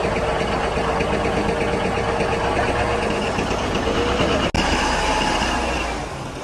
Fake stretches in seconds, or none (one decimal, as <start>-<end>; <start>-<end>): none